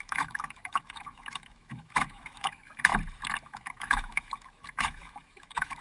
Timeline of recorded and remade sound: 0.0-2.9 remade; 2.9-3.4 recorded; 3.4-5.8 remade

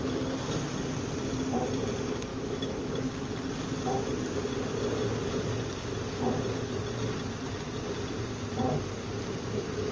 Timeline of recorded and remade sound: 0.0-2.3 recorded; 2.3-3.1 remade; 3.1-9.9 recorded

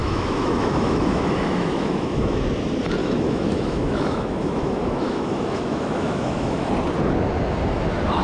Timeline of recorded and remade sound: 0.0-2.4 remade; 2.4-3.0 recorded; 3.0-6.7 remade; 6.7-8.2 recorded